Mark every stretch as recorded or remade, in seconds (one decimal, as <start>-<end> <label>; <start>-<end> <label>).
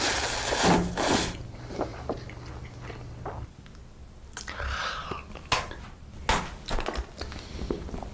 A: 0.0-8.1 recorded